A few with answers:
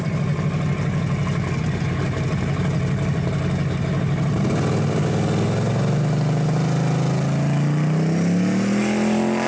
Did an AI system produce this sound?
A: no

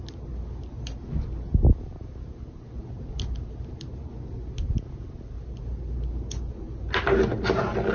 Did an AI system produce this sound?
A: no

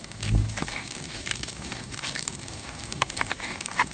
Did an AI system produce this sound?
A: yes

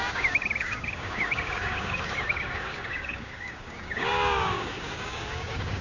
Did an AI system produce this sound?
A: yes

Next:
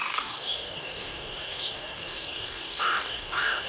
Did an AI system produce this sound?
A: yes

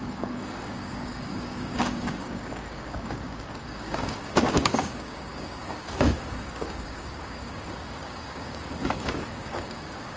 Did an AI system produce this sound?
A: yes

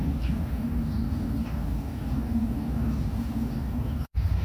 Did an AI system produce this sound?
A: yes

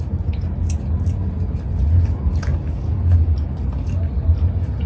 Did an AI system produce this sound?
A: no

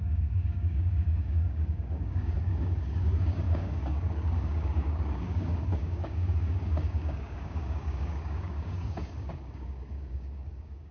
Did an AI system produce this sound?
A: yes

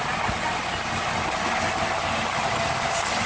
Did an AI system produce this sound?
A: no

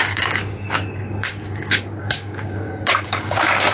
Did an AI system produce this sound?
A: yes